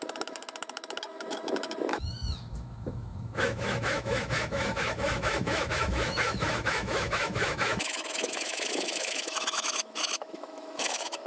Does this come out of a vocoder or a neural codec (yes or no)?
yes